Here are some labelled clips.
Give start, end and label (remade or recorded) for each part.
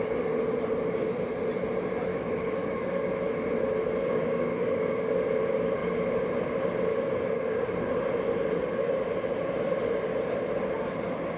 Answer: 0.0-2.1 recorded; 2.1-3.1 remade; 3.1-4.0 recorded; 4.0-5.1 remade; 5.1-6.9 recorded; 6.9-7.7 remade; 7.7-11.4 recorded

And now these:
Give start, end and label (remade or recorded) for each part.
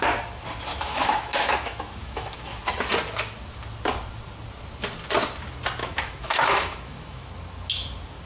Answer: 0.0-0.7 recorded; 0.7-2.7 remade; 2.7-5.8 recorded; 5.8-7.3 remade; 7.3-8.3 recorded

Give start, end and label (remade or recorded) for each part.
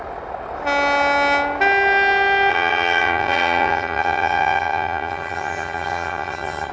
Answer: 0.0-2.5 recorded; 2.5-6.7 remade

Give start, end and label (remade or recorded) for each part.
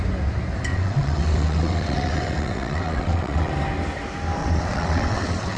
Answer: 0.0-0.7 recorded; 0.7-3.5 remade; 3.5-4.4 recorded; 4.4-5.6 remade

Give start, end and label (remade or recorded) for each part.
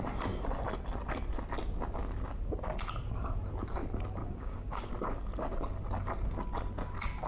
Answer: 0.0-4.2 recorded; 4.2-4.9 remade; 4.9-7.3 recorded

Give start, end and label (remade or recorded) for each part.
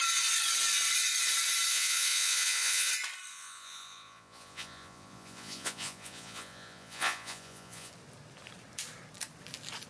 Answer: 0.0-1.7 recorded; 1.7-2.9 remade; 2.9-3.3 recorded; 3.3-7.9 remade; 7.9-9.9 recorded